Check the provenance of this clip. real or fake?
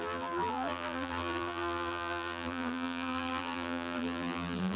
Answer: fake